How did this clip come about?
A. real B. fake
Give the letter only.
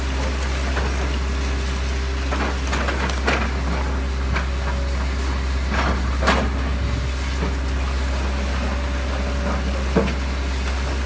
A